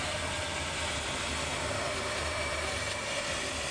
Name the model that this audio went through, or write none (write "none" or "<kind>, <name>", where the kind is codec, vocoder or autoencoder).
none